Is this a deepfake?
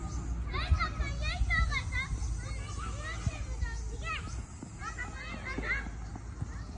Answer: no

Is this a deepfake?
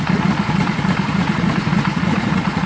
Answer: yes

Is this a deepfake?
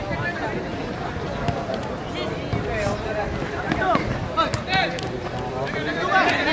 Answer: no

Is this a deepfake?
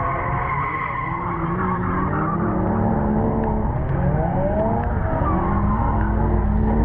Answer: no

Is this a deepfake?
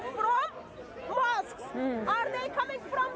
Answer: no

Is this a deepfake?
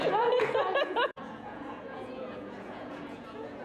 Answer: yes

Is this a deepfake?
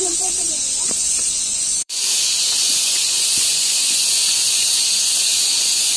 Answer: yes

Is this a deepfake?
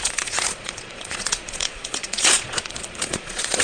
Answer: yes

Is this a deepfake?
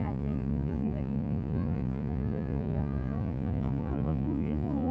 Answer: yes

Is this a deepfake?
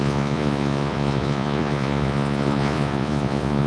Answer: yes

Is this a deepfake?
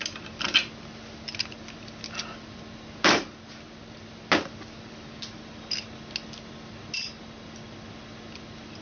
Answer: no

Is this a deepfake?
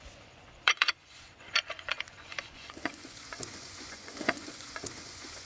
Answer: yes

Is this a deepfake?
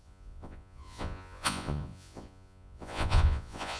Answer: yes